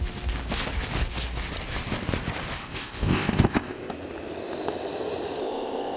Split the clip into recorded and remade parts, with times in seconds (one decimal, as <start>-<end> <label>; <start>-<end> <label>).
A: 0.0-2.6 recorded; 2.6-3.9 remade; 3.9-5.4 recorded; 5.4-6.0 remade